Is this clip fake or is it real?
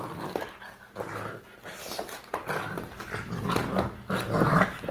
real